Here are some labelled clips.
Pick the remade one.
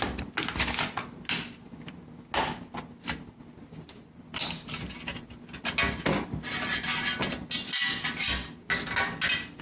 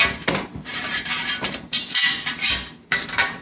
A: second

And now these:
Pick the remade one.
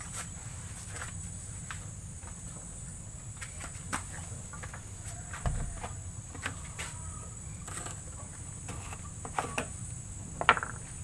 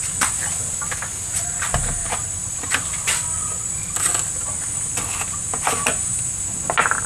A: first